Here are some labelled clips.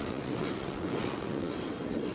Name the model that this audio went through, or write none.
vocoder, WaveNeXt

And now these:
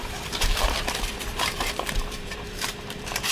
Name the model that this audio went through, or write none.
vocoder, BigVGAN v2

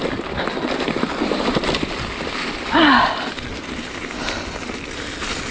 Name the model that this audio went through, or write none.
none